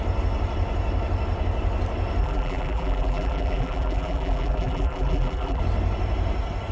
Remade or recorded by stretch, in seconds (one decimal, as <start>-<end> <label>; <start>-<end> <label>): 0.0-2.2 recorded; 2.2-5.6 remade; 5.6-6.7 recorded